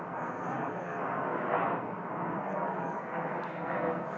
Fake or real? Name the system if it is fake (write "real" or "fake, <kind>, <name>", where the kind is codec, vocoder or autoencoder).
fake, codec, SNAC